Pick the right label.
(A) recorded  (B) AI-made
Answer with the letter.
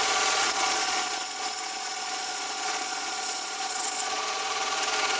B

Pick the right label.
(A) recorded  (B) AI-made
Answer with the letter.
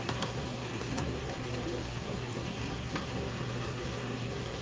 B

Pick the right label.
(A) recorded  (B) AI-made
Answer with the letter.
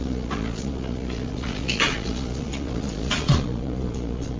B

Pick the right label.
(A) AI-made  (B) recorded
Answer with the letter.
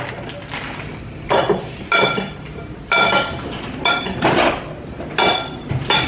B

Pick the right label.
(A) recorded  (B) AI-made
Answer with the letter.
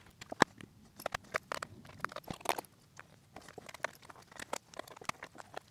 A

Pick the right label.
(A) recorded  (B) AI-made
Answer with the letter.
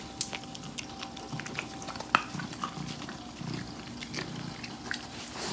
A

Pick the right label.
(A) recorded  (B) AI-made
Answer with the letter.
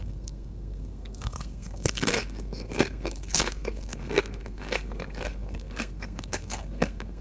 B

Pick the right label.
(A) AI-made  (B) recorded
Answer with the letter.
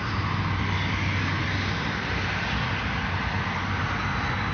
B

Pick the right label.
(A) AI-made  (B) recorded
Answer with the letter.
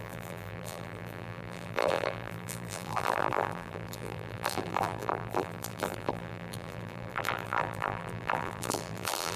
A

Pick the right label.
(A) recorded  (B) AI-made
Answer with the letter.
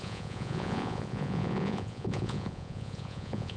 B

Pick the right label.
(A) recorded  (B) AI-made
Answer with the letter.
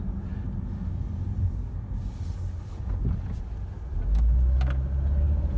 A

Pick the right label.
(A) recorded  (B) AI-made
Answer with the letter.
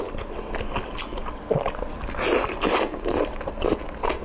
A